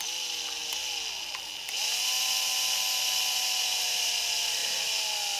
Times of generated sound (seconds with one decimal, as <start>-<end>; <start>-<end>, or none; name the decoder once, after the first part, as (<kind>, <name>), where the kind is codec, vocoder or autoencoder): none